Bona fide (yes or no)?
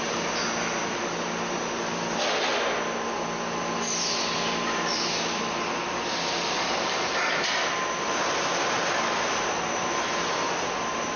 yes